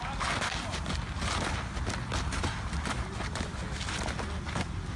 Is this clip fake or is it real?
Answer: real